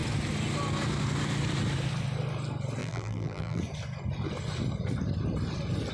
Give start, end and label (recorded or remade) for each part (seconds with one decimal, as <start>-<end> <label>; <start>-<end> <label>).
0.0-2.8 recorded; 2.8-3.6 remade; 3.6-5.9 recorded